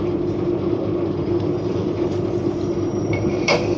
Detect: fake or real fake